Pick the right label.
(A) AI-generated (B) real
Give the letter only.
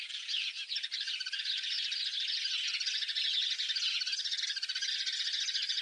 B